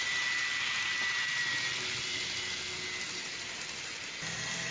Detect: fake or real real